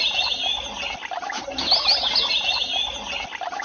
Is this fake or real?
real